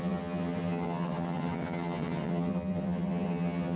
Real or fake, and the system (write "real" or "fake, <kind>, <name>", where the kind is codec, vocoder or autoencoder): fake, vocoder, HiFi-GAN